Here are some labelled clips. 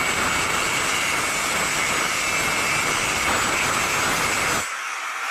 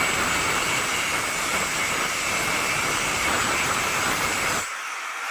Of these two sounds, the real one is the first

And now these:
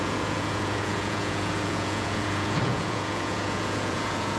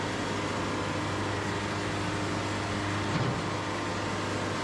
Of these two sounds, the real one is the second